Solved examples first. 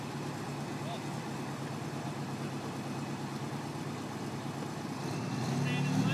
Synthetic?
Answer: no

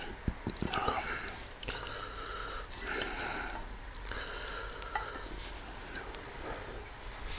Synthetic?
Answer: no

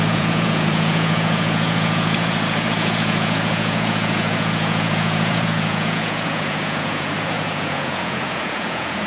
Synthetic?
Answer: yes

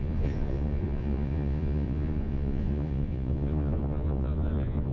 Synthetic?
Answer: yes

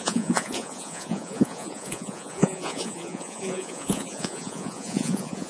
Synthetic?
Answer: yes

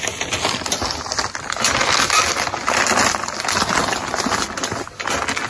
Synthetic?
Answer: no